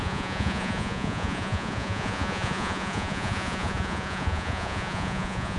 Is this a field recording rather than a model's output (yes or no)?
no